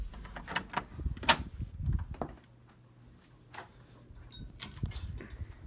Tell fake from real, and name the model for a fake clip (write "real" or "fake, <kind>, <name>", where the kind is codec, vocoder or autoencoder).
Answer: real